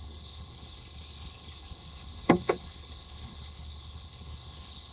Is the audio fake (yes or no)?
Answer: yes